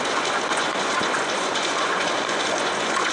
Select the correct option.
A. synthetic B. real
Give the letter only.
A